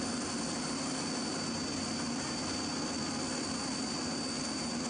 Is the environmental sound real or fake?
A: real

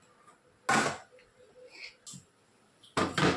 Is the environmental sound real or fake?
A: real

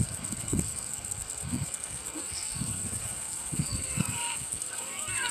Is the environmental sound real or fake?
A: fake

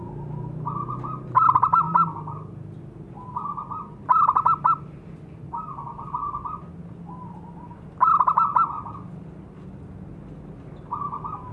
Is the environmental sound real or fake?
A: real